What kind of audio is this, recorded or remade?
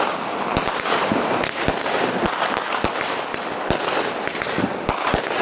recorded